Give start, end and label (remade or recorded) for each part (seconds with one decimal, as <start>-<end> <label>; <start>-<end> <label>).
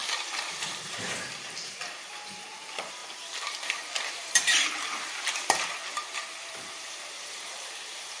0.0-5.8 remade; 5.8-6.3 recorded; 6.3-8.2 remade